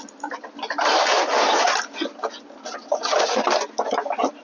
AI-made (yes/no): no